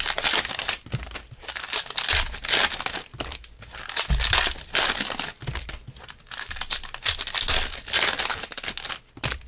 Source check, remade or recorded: recorded